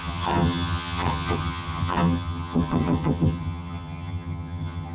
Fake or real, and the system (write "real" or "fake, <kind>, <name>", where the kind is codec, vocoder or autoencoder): fake, vocoder, HiFi-GAN